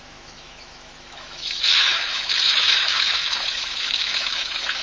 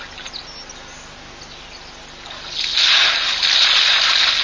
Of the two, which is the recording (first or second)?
second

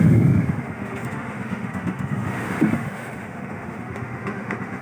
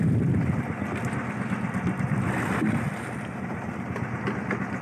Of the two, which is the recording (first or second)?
second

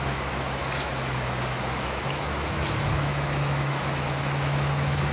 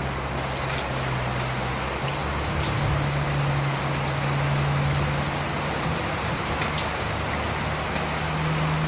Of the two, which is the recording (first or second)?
second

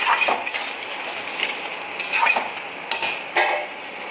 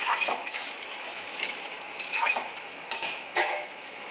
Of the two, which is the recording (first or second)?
first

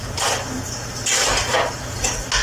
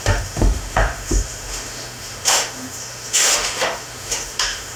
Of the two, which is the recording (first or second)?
first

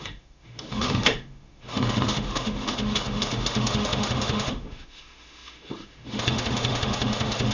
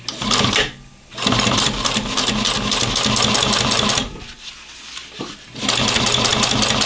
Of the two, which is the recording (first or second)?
second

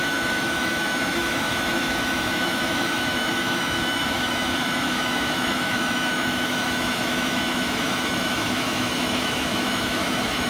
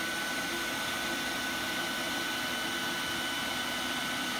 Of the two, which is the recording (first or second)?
second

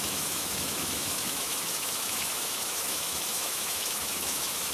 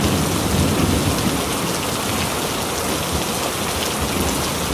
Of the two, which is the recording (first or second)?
second